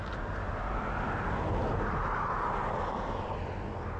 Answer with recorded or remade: recorded